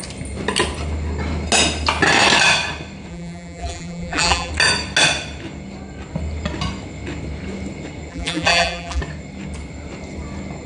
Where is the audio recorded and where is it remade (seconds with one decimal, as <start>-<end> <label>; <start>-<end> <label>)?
0.0-3.1 recorded; 3.1-4.5 remade; 4.5-8.1 recorded; 8.1-9.0 remade; 9.0-10.7 recorded